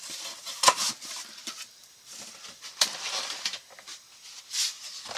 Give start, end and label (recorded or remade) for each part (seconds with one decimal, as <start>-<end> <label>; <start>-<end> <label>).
0.0-1.4 recorded; 1.4-3.3 remade; 3.3-3.9 recorded; 3.9-4.4 remade; 4.4-5.2 recorded